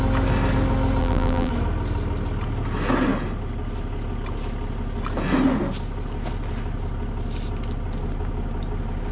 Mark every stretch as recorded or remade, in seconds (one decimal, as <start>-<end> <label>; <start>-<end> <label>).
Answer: 0.0-1.0 recorded; 1.0-1.5 remade; 1.5-9.1 recorded